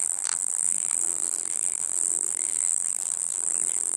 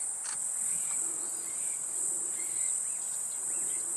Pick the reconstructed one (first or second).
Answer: first